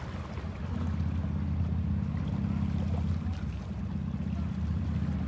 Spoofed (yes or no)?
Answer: no